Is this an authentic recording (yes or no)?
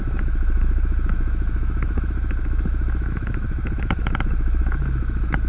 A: no